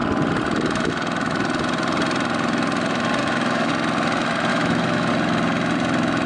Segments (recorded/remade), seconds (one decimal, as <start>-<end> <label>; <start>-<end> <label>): 0.0-3.2 recorded; 3.2-3.7 remade; 3.7-4.5 recorded; 4.5-5.1 remade; 5.1-6.3 recorded